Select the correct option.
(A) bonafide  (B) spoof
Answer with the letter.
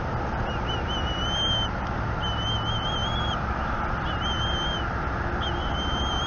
A